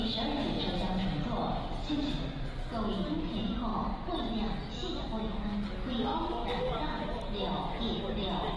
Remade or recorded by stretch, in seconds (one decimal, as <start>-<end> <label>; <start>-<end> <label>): 0.0-3.7 recorded; 3.7-4.3 remade; 4.3-6.1 recorded; 6.1-8.0 remade; 8.0-8.6 recorded